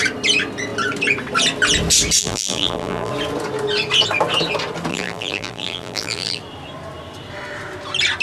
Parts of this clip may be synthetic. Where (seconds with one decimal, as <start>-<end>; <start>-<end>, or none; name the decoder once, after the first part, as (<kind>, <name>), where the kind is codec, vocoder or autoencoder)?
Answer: 2.2-3.1 (vocoder, BigVGAN v2); 4.9-6.4